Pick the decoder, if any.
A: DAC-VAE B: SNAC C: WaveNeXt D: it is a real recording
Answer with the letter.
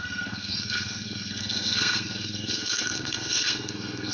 B